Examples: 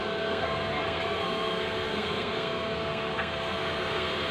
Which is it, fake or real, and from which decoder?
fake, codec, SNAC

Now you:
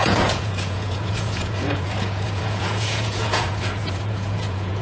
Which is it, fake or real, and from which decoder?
fake, vocoder, Vocos